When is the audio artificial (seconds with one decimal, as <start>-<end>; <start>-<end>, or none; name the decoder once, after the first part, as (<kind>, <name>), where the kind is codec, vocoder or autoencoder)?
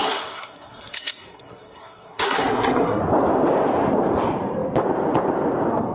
0.0-3.0 (codec, SNAC)